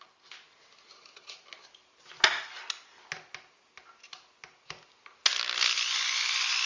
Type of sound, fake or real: real